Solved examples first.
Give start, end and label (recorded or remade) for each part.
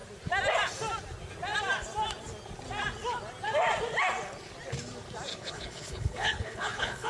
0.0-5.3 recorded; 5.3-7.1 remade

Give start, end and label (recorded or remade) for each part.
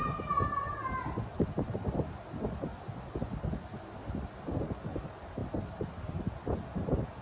0.0-7.2 recorded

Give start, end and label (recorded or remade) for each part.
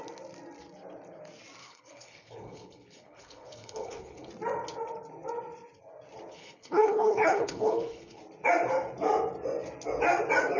0.0-1.6 recorded; 1.6-4.3 remade; 4.3-6.3 recorded; 6.3-8.2 remade; 8.2-10.6 recorded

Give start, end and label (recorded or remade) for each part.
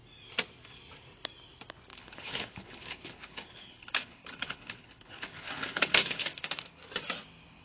0.0-1.9 recorded; 1.9-6.5 remade; 6.5-7.6 recorded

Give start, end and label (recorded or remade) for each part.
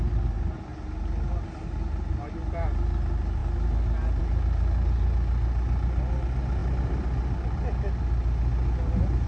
0.0-9.3 recorded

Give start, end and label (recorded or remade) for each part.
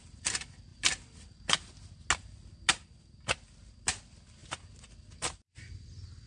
0.0-6.3 recorded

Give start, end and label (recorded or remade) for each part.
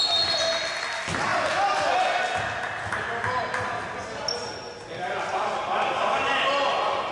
0.0-7.1 recorded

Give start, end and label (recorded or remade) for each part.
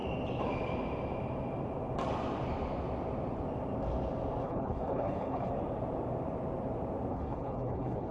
0.0-4.4 recorded; 4.4-5.5 remade; 5.5-7.1 recorded; 7.1-8.1 remade